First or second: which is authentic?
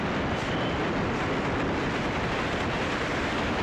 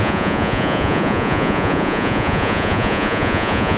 first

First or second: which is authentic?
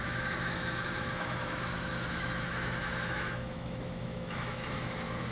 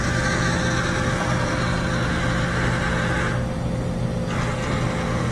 second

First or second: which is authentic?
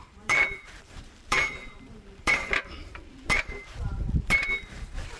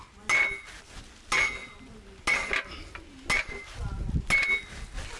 second